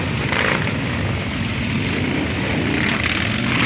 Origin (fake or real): real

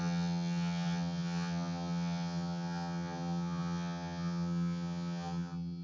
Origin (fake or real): fake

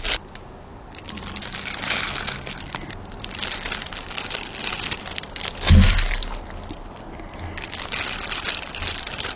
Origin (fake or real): real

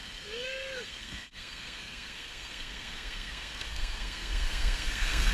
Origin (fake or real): fake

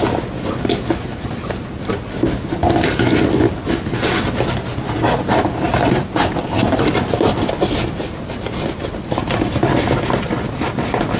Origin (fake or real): real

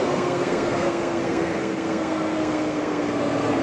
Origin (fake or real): fake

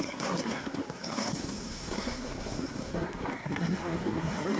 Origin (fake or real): fake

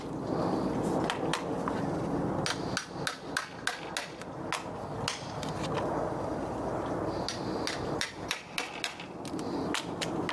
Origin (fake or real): real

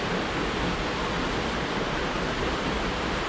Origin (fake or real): real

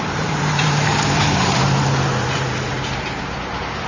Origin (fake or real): fake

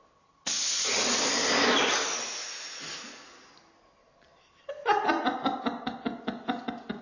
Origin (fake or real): real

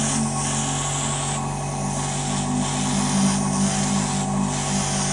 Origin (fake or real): real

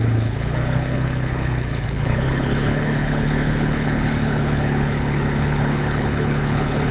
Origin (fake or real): fake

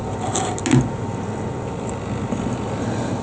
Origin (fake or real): real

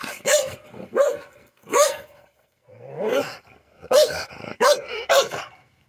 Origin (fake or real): fake